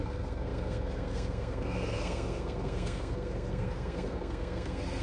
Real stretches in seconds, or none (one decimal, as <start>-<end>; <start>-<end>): none